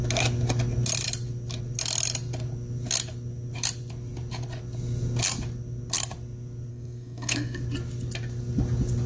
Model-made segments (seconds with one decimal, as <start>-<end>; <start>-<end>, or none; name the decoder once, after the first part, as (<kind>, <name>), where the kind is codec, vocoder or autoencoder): 6.7-7.6 (codec, SNAC)